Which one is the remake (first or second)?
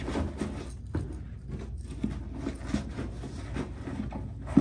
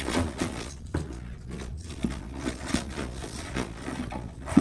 second